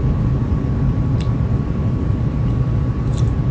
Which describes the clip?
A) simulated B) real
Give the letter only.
B